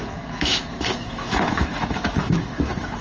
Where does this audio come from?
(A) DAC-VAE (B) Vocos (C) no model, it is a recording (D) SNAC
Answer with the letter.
A